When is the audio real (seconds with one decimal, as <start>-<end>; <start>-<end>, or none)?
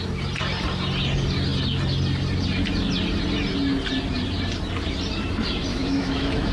0.0-5.7